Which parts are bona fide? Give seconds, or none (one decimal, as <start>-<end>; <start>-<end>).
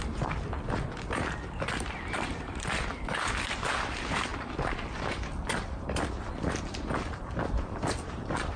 4.3-4.8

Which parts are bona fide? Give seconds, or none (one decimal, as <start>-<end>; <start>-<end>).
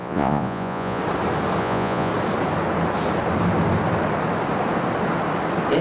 1.0-1.6; 2.1-5.8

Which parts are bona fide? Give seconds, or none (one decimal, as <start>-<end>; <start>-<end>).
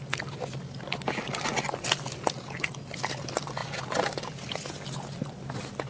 0.0-5.9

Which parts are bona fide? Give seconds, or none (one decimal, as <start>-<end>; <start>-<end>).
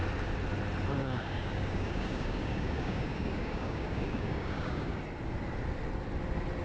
0.0-1.0; 5.0-6.6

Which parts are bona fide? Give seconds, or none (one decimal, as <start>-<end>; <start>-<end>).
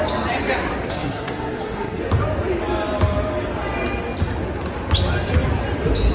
0.0-0.9; 2.0-6.1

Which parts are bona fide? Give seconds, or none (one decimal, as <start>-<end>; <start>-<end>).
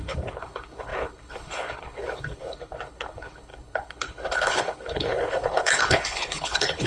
none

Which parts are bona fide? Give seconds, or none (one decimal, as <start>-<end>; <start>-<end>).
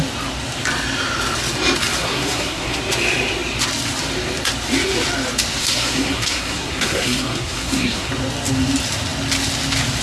0.0-2.0; 2.8-5.6; 8.1-10.0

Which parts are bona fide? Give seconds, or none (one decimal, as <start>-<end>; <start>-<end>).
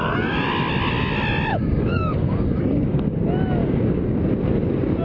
0.0-1.5; 3.2-3.6; 4.2-5.0